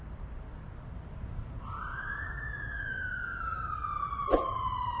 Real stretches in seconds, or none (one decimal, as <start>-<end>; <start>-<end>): 0.0-1.9; 3.7-5.0